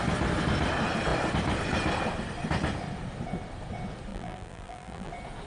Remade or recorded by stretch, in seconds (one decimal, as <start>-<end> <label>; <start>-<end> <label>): 0.0-4.1 recorded; 4.1-5.1 remade; 5.1-5.5 recorded